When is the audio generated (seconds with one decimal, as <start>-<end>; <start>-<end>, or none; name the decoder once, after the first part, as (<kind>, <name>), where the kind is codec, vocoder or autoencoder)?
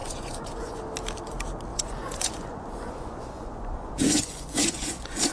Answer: 0.0-0.8 (vocoder, Vocos); 1.7-5.3